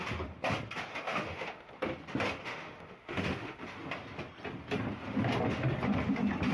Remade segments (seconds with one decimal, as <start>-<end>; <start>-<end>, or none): 0.9-1.7; 2.4-3.6